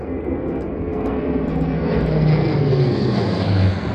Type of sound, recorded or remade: remade